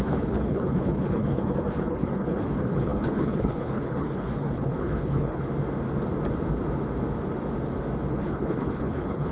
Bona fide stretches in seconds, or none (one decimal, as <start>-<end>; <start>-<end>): 5.4-8.1